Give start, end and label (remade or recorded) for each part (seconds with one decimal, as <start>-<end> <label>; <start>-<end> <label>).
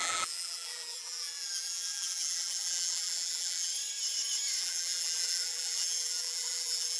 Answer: 0.0-3.7 remade; 3.7-4.6 recorded; 4.6-7.0 remade